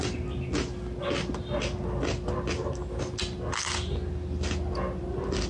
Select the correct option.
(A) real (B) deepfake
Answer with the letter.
A